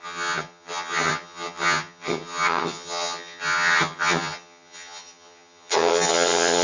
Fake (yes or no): yes